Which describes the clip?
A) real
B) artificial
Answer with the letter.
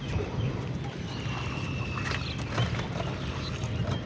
A